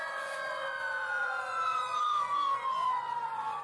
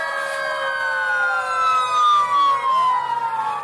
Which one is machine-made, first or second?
first